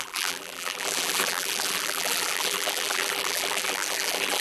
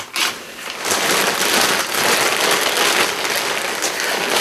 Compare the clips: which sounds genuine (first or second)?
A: second